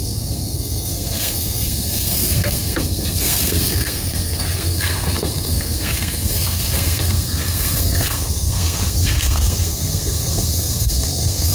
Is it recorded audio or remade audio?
remade